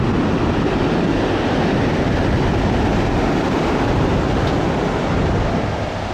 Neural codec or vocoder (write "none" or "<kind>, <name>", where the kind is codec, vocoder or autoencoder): none